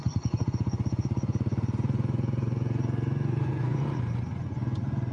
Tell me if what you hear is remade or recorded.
remade